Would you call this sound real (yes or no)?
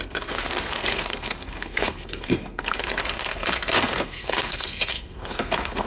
no